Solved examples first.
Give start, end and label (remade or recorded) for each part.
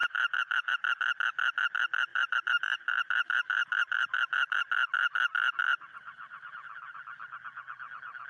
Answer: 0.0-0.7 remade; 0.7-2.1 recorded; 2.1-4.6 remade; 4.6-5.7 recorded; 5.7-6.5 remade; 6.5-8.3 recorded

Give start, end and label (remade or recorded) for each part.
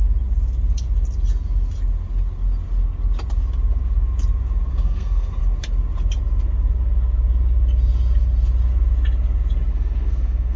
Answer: 0.0-4.7 recorded; 4.7-5.4 remade; 5.4-9.7 recorded; 9.7-10.6 remade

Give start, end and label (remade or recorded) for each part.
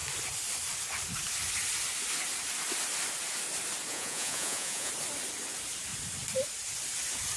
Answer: 0.0-3.9 recorded; 3.9-4.9 remade; 4.9-7.4 recorded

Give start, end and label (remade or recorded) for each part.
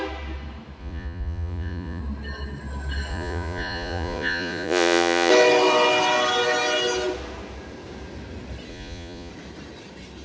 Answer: 0.0-0.8 recorded; 0.8-2.0 remade; 2.0-3.1 recorded; 3.1-5.3 remade; 5.3-8.7 recorded; 8.7-9.3 remade; 9.3-10.2 recorded